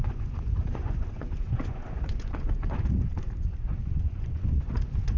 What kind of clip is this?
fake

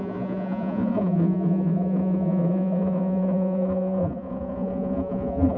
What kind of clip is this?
fake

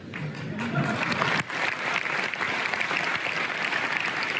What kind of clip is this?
real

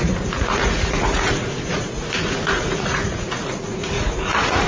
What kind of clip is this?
fake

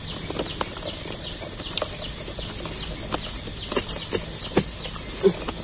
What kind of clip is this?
real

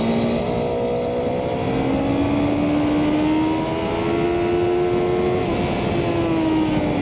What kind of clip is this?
real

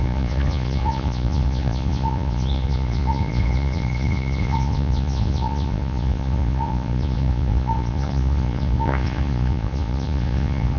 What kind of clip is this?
fake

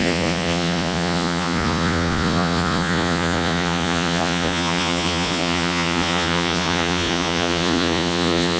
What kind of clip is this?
fake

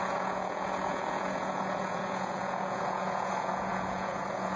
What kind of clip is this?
fake